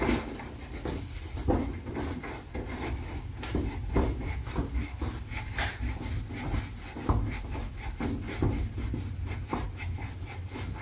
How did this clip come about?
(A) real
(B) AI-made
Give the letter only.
A